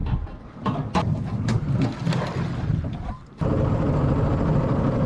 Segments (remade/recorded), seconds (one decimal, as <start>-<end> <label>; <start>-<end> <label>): 0.0-5.1 recorded